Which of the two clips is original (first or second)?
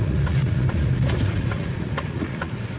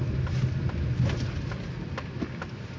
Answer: second